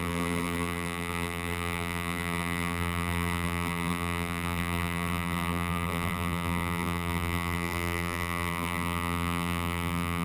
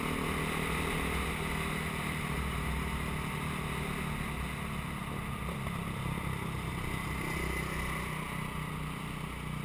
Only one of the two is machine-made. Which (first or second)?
first